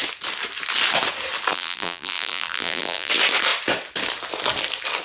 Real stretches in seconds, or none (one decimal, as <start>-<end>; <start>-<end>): 0.0-1.5; 3.1-5.0